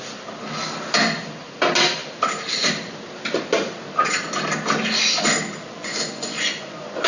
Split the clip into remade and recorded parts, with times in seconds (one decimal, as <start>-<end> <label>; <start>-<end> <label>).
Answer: 0.0-5.8 recorded; 5.8-7.1 remade